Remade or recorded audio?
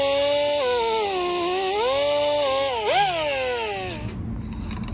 recorded